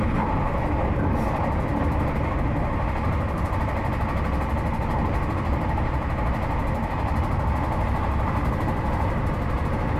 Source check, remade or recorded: recorded